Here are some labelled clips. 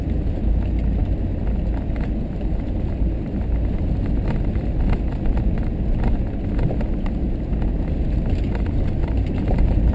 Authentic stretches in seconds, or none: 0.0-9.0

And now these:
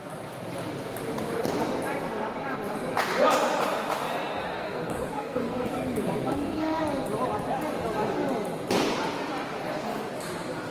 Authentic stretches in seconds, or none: 0.0-4.5; 6.8-10.7